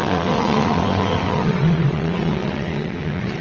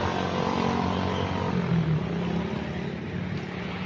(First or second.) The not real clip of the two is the first